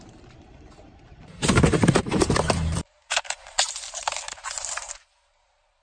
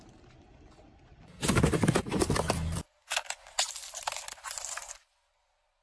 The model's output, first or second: first